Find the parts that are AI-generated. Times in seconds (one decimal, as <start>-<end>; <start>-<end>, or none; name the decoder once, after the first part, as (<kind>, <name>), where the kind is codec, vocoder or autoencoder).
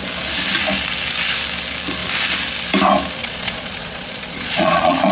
3.2-5.1 (vocoder, Vocos)